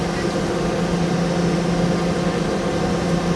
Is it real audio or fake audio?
real